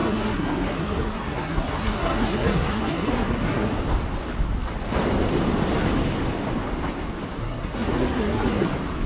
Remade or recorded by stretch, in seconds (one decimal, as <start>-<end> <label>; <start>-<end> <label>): 0.0-3.7 remade; 3.7-7.4 recorded; 7.4-8.7 remade; 8.7-9.1 recorded